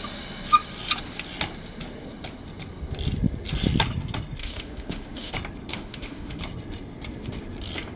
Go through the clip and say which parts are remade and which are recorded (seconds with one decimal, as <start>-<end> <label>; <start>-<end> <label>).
0.0-4.4 recorded; 4.4-5.3 remade; 5.3-5.7 recorded; 5.7-6.4 remade; 6.4-8.0 recorded